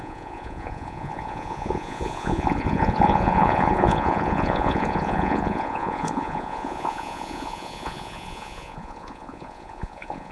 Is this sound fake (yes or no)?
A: yes